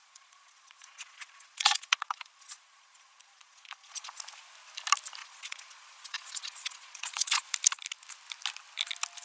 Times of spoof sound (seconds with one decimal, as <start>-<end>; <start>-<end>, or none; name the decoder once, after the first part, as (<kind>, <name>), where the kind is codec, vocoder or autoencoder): 0.0-4.2 (vocoder, Vocos); 5.2-7.4